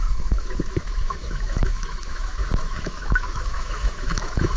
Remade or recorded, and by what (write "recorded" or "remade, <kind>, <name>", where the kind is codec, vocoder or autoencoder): remade, autoencoder, DAC-VAE